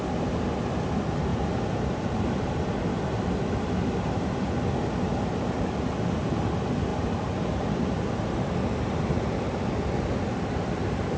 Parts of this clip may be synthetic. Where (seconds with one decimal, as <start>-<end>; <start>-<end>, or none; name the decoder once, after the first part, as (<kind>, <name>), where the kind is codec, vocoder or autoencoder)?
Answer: 1.3-2.6 (vocoder, BigVGAN v2); 6.9-8.0